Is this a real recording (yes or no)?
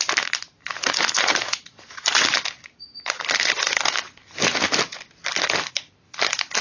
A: yes